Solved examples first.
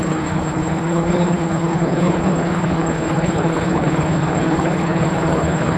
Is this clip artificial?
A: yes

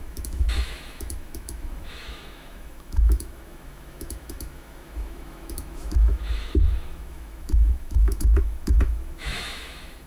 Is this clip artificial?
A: yes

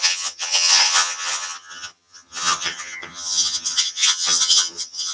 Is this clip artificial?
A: yes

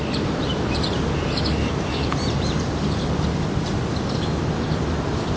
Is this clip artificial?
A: yes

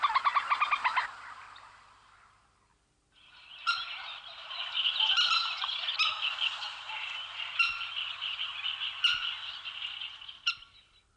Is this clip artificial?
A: no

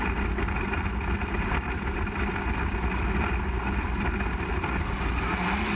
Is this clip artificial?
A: no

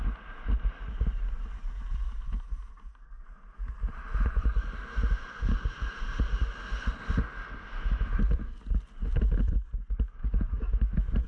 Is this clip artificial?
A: no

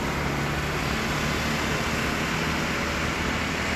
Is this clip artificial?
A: no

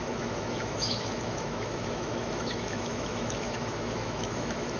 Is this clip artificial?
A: yes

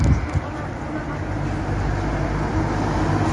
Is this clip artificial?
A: no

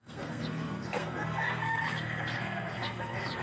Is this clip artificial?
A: yes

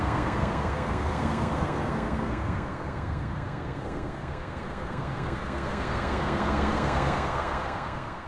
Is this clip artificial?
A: yes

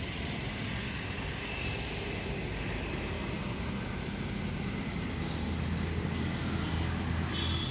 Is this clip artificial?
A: no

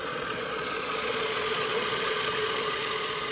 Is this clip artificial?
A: yes